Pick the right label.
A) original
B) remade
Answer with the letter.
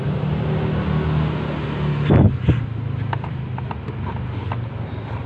A